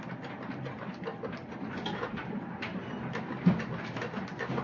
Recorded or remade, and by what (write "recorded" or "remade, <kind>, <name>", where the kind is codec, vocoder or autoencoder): recorded